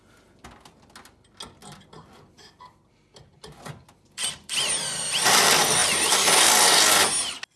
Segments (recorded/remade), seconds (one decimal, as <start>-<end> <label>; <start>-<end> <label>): 0.0-1.6 recorded; 1.6-5.0 remade; 5.0-5.8 recorded; 5.8-6.5 remade; 6.5-7.6 recorded